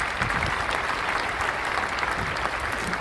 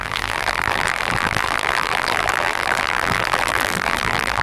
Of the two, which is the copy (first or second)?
second